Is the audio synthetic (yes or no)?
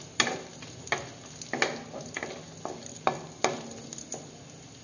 no